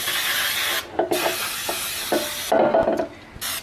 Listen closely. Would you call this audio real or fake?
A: real